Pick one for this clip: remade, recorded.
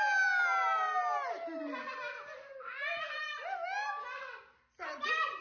recorded